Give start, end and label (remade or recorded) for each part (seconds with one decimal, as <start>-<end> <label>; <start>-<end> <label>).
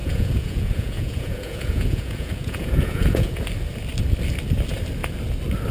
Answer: 0.0-3.4 remade; 3.4-5.7 recorded